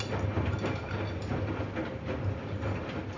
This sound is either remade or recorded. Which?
recorded